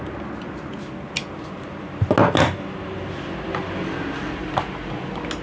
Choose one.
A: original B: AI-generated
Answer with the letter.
A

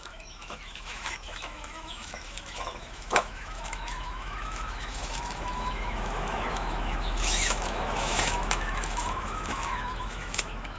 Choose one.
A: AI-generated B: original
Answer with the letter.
A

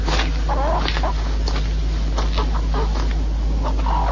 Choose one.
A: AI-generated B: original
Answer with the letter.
B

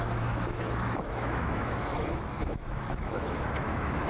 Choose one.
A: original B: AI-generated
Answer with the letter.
B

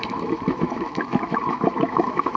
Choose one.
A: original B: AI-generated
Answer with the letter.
B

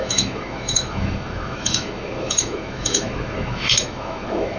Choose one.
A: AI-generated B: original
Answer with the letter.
A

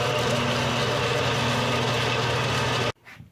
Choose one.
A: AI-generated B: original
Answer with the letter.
B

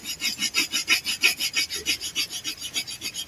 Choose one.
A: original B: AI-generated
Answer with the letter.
A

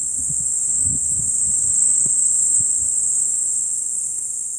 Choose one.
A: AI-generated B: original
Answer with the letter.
A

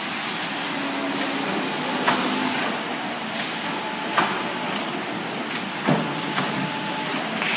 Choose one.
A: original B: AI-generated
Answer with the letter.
A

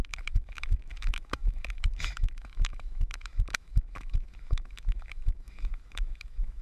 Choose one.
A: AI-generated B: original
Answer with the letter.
A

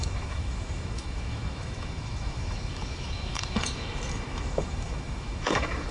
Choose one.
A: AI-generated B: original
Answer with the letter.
A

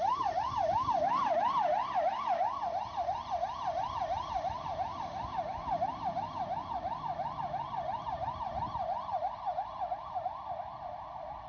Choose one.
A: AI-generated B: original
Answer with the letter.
B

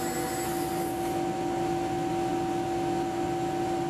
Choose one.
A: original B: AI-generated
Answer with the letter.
A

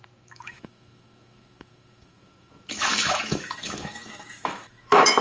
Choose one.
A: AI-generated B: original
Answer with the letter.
A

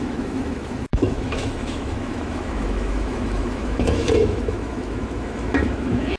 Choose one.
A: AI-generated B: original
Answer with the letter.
A